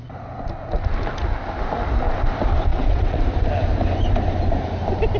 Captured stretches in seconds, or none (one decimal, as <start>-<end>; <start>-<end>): 0.0-2.7; 3.2-5.2